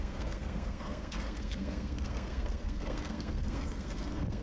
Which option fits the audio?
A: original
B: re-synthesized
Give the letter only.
B